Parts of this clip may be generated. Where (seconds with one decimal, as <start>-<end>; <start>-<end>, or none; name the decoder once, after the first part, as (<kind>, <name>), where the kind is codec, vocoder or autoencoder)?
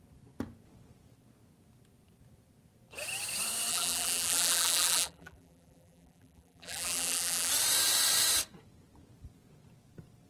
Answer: 3.7-7.5 (vocoder, BigVGAN v2)